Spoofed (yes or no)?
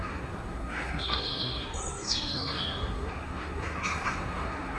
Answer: yes